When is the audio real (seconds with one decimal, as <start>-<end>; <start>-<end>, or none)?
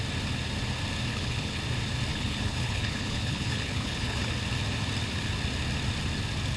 0.0-1.1; 1.6-2.1; 4.3-6.6